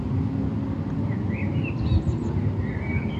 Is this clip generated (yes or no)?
no